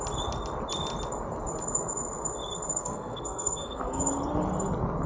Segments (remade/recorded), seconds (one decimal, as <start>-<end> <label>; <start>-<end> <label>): 0.0-2.8 recorded; 2.8-4.0 remade; 4.0-5.1 recorded